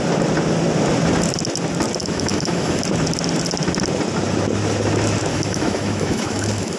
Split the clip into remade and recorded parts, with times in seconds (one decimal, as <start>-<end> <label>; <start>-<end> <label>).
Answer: 0.0-2.0 recorded; 2.0-2.8 remade; 2.8-5.3 recorded; 5.3-6.8 remade